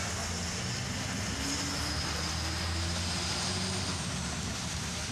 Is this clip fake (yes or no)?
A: no